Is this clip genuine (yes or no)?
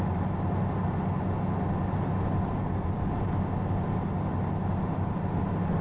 yes